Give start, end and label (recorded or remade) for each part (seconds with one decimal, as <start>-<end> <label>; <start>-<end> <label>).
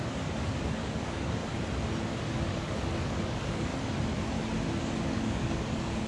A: 0.0-1.4 remade; 1.4-2.2 recorded; 2.2-3.7 remade; 3.7-4.8 recorded; 4.8-6.1 remade